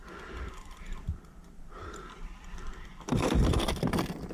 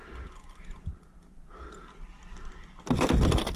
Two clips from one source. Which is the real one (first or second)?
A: second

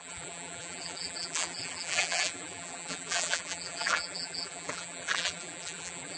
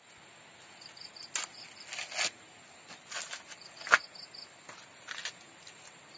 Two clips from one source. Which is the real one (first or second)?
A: second